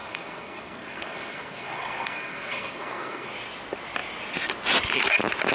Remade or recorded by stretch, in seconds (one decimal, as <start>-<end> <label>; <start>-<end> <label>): 0.0-3.3 remade; 3.3-5.5 recorded